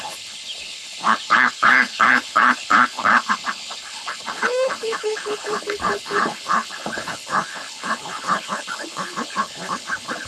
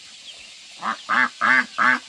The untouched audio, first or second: second